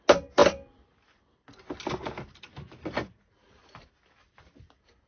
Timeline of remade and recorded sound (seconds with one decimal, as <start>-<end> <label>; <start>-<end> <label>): 0.0-5.1 recorded